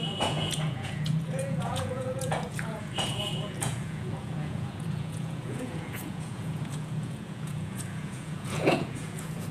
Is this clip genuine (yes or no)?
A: no